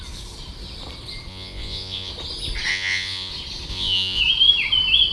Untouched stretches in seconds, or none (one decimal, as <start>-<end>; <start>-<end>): 0.0-1.3; 2.1-2.7; 3.3-3.7; 4.2-5.1